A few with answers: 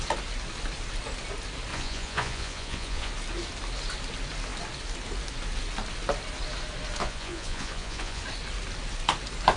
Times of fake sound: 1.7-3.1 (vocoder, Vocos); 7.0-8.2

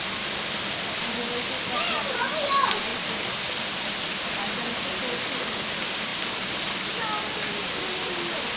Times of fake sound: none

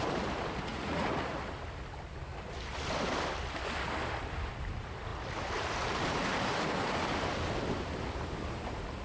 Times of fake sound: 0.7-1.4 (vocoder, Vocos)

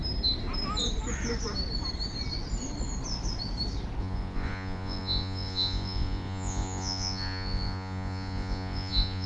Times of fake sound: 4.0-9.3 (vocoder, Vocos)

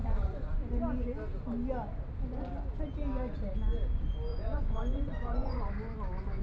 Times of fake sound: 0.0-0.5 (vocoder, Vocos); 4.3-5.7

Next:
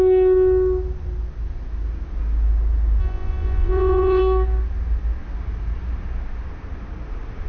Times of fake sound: 3.0-4.2 (vocoder, Vocos)

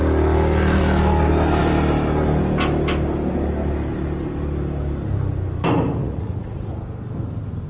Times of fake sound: 6.0-6.7 (vocoder, Vocos)